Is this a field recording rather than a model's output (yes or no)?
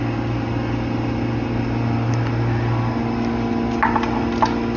yes